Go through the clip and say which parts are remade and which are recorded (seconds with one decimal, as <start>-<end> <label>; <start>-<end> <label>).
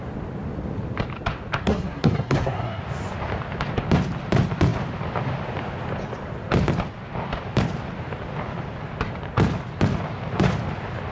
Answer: 0.0-1.6 recorded; 1.6-2.8 remade; 2.8-11.1 recorded